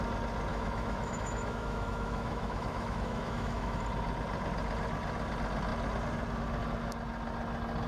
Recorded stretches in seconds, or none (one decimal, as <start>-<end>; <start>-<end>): 0.0-0.5; 3.8-7.9